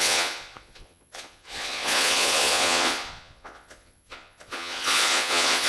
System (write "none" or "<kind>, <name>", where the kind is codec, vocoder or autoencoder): vocoder, Vocos